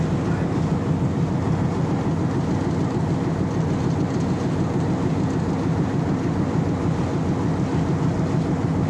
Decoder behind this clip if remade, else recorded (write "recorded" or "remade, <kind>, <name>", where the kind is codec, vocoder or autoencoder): recorded